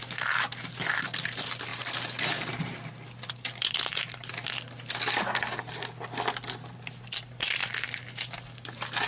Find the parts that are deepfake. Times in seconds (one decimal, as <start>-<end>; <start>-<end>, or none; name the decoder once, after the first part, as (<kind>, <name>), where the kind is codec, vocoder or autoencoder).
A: none